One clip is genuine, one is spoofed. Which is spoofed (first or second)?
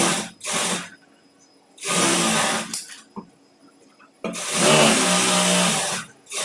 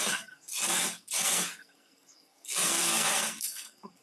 second